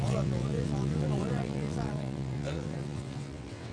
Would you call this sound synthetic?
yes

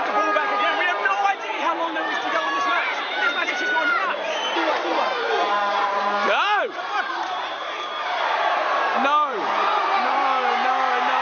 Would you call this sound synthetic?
yes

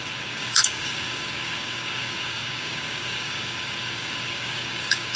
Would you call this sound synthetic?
yes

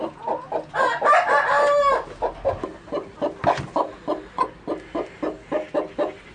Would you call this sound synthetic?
no